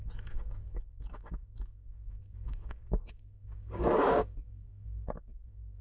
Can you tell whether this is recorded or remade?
remade